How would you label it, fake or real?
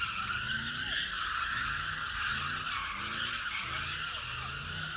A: real